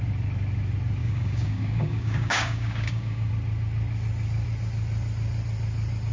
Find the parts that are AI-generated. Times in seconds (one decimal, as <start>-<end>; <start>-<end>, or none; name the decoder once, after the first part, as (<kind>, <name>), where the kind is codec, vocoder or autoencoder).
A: 1.0-3.3 (codec, DAC)